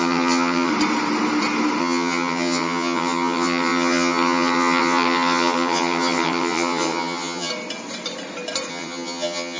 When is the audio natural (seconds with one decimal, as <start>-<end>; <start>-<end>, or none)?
0.7-1.8; 7.5-8.7